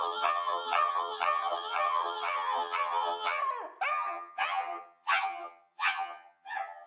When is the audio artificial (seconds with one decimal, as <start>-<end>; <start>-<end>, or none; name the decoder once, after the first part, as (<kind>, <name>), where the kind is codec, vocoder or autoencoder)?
0.0-3.4 (vocoder, HiFi-GAN); 3.9-6.9